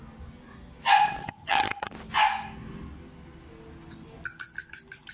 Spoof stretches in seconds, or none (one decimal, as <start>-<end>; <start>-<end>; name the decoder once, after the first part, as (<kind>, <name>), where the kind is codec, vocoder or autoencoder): 1.2-1.9 (vocoder, HiFi-GAN)